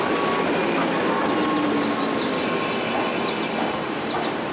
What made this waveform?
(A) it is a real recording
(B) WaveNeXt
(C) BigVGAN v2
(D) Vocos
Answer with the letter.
A